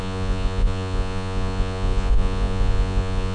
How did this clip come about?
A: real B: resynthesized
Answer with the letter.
B